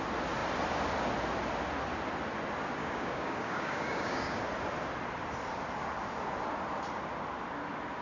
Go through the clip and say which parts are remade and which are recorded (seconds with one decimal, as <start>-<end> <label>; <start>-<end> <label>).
0.0-2.8 recorded; 2.8-4.4 remade; 4.4-8.0 recorded